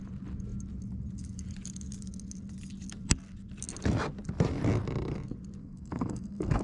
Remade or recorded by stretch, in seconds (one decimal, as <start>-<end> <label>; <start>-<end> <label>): 0.0-5.6 recorded; 5.6-6.6 remade